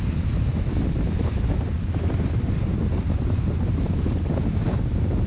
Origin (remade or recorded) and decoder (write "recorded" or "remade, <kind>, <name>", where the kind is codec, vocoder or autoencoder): recorded